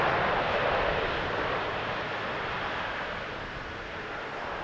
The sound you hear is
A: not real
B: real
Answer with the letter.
B